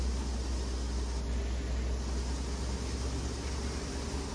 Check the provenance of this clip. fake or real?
real